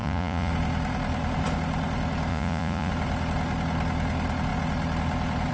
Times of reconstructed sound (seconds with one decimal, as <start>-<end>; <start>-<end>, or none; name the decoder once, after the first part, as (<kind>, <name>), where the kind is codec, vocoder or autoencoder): 0.0-0.5 (vocoder, Vocos); 2.3-2.9